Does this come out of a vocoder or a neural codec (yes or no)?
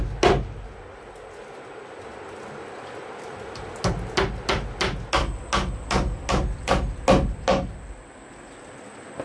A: no